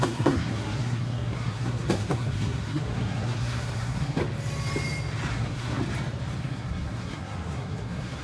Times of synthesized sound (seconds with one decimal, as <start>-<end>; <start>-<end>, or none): 0.0-4.2; 5.3-5.8; 6.4-8.2